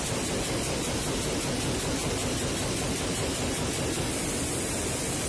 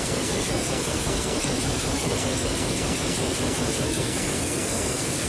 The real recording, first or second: first